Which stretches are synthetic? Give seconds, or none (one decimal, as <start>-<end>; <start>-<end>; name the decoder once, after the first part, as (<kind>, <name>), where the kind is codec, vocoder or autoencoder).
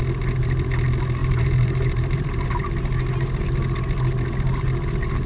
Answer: 1.2-2.5 (vocoder, BigVGAN v2)